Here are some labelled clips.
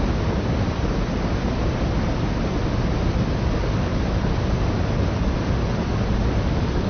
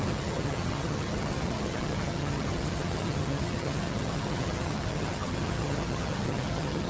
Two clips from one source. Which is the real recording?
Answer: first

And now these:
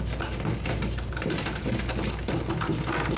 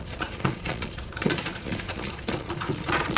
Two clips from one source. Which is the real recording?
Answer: first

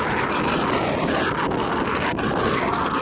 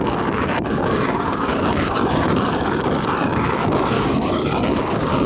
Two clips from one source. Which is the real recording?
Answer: first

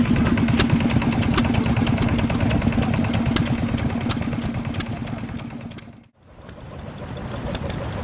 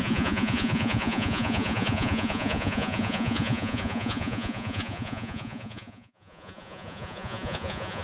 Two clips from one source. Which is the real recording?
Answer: first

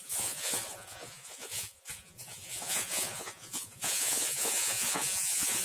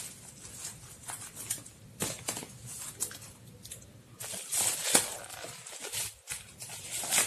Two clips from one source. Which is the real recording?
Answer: second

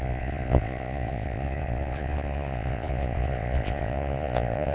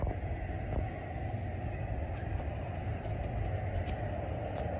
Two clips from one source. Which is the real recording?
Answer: second